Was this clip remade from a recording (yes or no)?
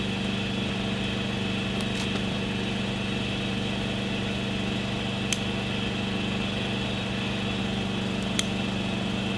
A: no